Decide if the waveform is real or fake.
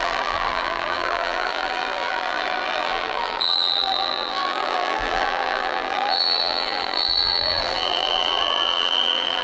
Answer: fake